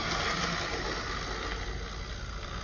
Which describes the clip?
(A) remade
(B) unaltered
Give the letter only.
B